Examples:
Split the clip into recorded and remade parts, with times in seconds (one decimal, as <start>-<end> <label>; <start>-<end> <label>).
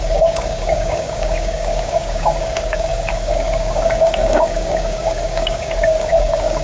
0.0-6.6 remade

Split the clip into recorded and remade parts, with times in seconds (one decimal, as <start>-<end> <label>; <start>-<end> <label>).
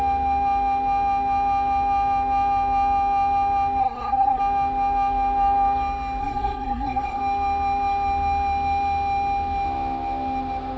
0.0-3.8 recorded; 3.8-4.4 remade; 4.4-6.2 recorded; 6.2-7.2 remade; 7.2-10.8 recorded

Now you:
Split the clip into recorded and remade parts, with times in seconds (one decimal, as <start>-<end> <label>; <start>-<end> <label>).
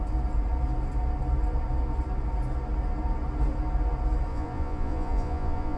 0.0-4.3 recorded; 4.3-5.8 remade